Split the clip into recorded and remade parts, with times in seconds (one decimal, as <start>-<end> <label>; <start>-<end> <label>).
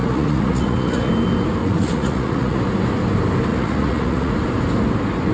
0.0-1.1 remade; 1.1-1.6 recorded; 1.6-2.6 remade; 2.6-3.5 recorded; 3.5-4.3 remade; 4.3-5.3 recorded